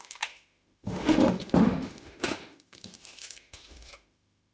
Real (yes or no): no